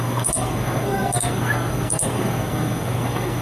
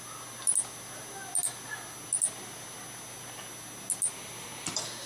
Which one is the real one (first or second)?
second